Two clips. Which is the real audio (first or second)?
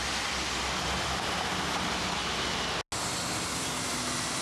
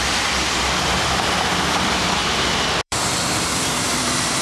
first